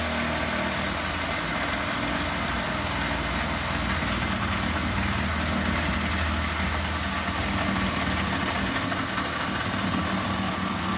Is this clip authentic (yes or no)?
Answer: yes